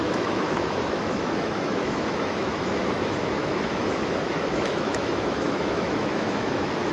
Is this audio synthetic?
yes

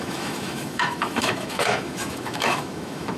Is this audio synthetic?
yes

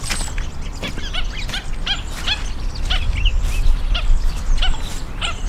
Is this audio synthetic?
no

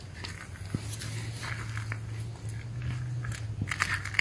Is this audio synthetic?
no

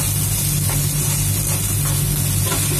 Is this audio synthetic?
no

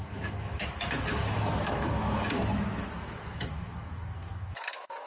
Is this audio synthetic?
yes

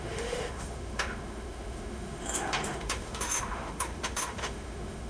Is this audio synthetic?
yes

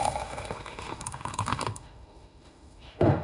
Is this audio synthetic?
yes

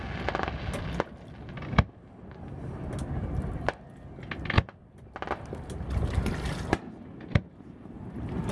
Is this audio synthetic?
no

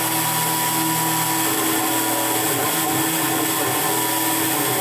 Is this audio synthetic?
no